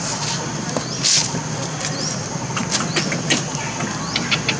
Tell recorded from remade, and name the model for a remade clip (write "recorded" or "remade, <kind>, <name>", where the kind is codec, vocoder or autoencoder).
recorded